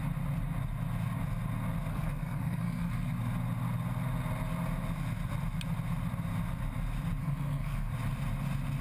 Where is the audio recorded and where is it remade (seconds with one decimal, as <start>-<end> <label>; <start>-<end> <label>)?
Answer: 0.0-1.9 recorded; 1.9-3.2 remade; 3.2-7.2 recorded; 7.2-7.9 remade; 7.9-8.8 recorded

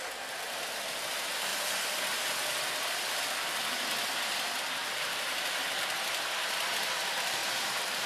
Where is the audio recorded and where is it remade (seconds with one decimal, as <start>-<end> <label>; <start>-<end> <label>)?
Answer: 0.0-4.8 recorded; 4.8-5.6 remade; 5.6-7.4 recorded; 7.4-8.1 remade

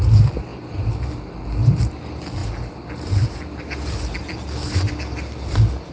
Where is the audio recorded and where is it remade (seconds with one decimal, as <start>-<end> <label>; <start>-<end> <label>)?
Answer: 0.0-5.9 recorded

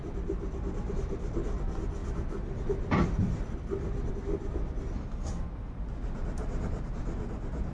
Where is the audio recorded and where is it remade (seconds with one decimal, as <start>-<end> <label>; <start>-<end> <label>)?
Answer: 0.0-7.7 recorded

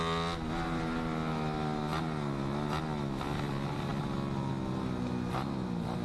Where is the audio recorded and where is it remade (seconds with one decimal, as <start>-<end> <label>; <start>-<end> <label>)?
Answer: 0.0-6.0 recorded

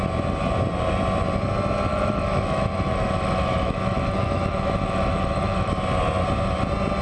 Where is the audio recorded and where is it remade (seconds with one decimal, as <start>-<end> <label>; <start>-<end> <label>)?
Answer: 0.0-1.9 recorded; 1.9-5.7 remade; 5.7-7.0 recorded

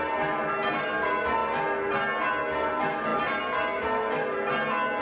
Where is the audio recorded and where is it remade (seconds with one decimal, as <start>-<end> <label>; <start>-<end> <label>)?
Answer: 0.0-5.0 recorded